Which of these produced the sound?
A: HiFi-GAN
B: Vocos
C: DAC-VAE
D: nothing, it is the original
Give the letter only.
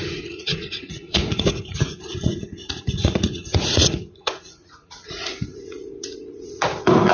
B